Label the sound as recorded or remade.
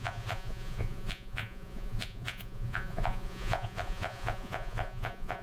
remade